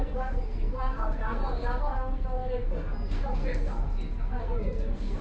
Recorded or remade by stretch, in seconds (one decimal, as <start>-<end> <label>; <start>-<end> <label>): 0.0-5.2 remade